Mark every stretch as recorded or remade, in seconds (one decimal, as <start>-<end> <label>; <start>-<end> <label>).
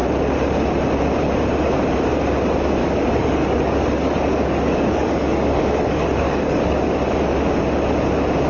0.0-2.8 recorded; 2.8-7.1 remade; 7.1-8.5 recorded